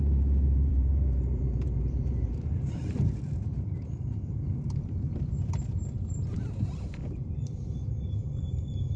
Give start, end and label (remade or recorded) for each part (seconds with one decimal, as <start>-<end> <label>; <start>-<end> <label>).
0.0-9.0 remade